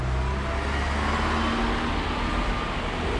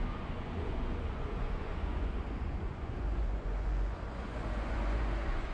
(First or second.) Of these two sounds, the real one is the first